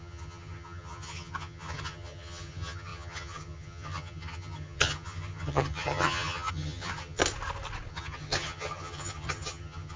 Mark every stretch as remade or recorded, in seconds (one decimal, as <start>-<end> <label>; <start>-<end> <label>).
0.0-7.2 remade; 7.2-7.9 recorded; 7.9-10.0 remade